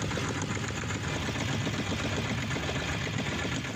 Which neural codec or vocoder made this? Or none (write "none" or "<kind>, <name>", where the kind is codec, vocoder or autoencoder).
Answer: none